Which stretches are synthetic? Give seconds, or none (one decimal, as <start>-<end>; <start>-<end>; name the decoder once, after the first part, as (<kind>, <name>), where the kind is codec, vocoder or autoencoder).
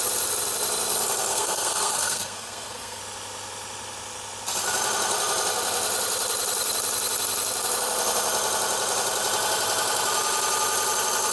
1.3-3.0 (codec, SNAC)